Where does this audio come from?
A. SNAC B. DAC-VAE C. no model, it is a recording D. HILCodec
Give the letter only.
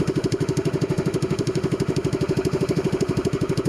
B